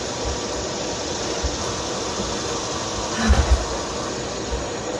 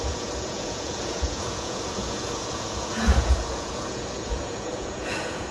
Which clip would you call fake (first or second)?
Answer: second